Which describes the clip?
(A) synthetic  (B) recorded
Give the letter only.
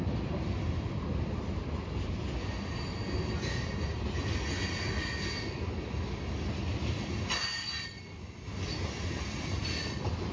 B